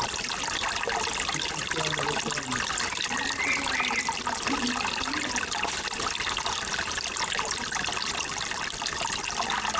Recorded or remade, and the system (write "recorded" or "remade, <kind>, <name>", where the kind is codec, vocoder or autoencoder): recorded